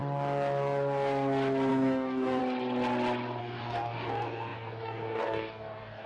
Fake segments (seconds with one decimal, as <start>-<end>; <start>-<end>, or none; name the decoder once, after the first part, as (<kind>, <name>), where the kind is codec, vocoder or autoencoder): 1.7-2.4 (codec, DAC); 3.4-6.1